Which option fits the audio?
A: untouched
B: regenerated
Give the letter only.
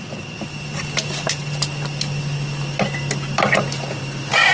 A